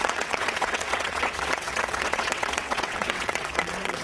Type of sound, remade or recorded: remade